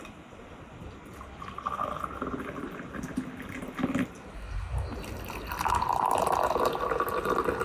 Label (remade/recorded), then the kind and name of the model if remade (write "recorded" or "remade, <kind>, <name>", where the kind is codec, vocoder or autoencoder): recorded